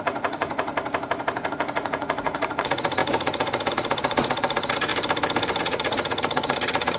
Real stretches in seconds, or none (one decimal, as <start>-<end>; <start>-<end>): 0.7-1.5; 4.9-5.6